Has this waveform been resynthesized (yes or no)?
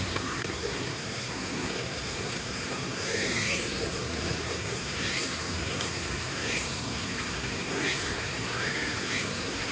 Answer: yes